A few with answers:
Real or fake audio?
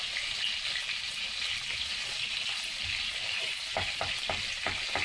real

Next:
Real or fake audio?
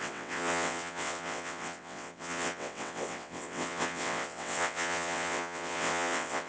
fake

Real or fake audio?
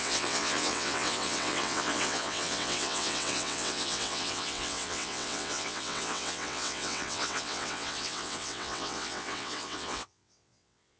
fake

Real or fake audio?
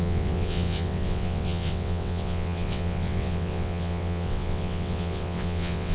fake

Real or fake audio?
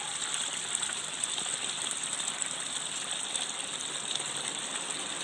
real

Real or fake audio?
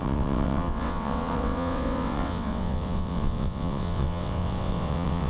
fake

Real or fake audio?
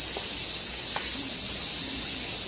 real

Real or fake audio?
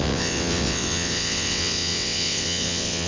fake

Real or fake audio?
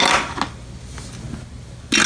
real